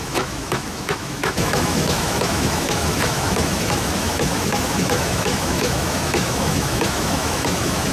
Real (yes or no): no